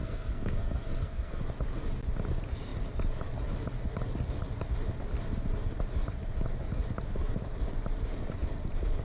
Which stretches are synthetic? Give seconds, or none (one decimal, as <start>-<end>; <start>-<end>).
0.0-1.4